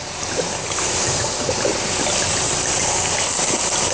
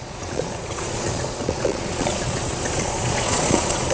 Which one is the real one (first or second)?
first